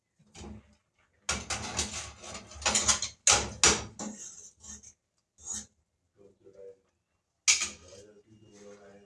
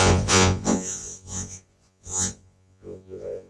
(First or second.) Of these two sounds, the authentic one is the first